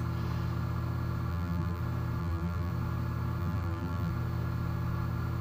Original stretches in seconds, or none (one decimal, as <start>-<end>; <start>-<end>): 0.0-1.3; 1.8-2.2; 2.7-3.4; 4.1-5.4